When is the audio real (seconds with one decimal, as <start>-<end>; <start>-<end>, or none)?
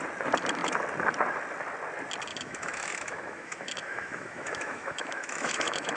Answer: 0.0-2.3